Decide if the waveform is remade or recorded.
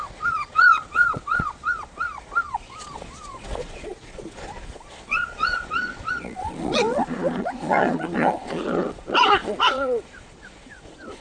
remade